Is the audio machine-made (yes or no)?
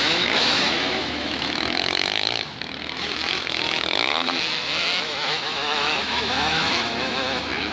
yes